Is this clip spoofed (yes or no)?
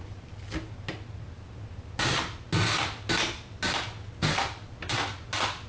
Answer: no